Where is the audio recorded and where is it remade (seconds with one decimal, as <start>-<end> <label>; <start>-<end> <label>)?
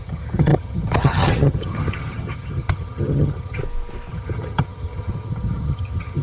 0.0-3.6 remade; 3.6-4.1 recorded; 4.1-6.2 remade